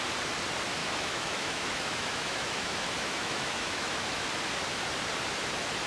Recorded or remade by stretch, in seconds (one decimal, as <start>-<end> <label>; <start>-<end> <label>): 0.0-0.8 recorded; 0.8-4.3 remade; 4.3-5.9 recorded